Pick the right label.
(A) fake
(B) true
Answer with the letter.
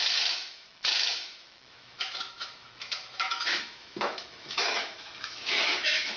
A